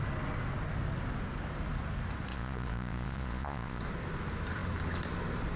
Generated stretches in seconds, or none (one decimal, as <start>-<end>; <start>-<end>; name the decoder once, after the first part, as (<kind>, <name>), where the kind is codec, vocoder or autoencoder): 2.3-3.8 (vocoder, Vocos)